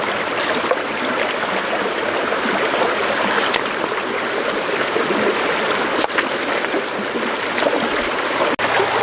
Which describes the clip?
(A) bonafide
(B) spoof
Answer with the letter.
A